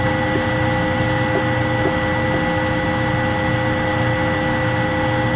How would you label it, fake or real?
real